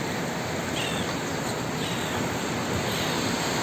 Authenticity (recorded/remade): recorded